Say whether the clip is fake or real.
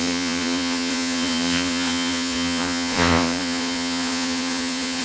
fake